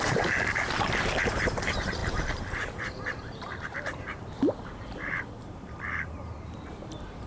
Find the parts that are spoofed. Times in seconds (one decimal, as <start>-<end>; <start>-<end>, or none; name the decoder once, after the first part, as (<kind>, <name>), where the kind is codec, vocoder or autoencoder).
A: 0.0-7.3 (vocoder, BigVGAN v2)